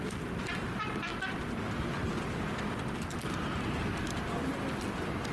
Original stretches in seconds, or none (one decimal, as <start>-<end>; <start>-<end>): 0.0-5.3